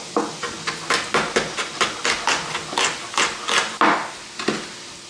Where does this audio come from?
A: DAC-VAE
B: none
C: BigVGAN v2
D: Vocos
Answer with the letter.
B